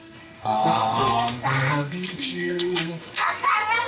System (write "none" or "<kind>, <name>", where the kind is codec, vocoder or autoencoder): codec, SNAC